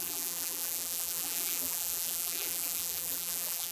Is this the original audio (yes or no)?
no